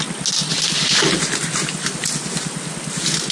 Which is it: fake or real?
real